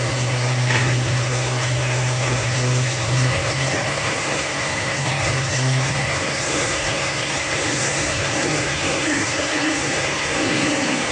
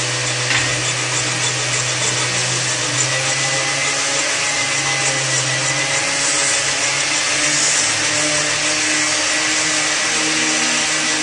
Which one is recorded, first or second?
second